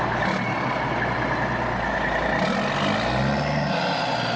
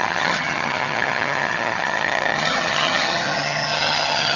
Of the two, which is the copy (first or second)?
second